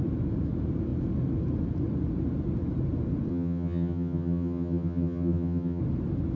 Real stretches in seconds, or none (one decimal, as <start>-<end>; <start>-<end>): 0.0-3.3; 5.8-6.4